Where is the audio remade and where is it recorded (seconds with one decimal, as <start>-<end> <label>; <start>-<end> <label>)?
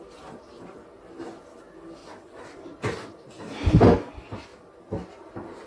0.0-2.0 recorded; 2.0-3.4 remade; 3.4-4.5 recorded; 4.5-5.3 remade; 5.3-5.7 recorded